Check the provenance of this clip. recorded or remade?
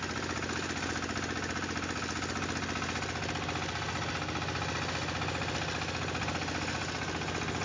recorded